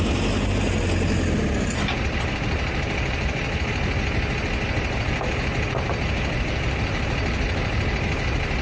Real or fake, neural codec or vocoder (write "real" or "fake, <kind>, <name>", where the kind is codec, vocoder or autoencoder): real